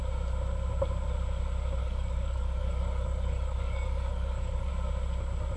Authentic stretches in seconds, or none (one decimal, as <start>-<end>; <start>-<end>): 0.0-1.8; 4.7-5.6